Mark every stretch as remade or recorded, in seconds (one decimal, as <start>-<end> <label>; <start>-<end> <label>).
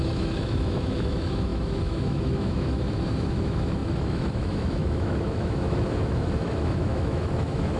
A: 0.0-7.8 remade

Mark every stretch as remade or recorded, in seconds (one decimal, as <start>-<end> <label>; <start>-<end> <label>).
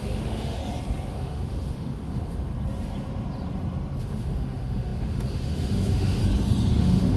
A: 0.0-0.6 remade; 0.6-1.1 recorded; 1.1-2.5 remade; 2.5-4.0 recorded; 4.0-6.2 remade; 6.2-6.7 recorded; 6.7-7.2 remade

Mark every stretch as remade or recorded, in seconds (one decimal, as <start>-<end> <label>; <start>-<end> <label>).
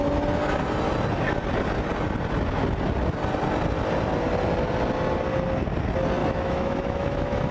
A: 0.0-6.2 recorded; 6.2-7.5 remade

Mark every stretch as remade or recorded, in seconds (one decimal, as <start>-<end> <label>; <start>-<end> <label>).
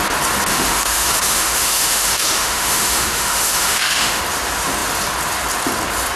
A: 0.0-0.5 recorded; 0.5-4.2 remade; 4.2-6.2 recorded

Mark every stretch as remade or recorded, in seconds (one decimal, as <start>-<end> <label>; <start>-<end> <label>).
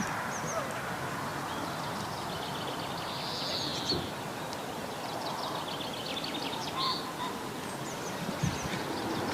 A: 0.0-9.3 recorded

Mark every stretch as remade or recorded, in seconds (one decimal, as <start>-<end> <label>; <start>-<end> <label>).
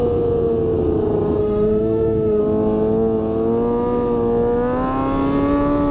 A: 0.0-1.4 recorded; 1.4-2.4 remade; 2.4-5.9 recorded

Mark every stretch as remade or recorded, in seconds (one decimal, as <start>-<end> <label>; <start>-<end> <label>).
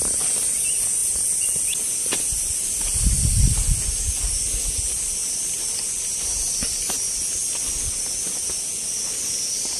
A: 0.0-9.8 recorded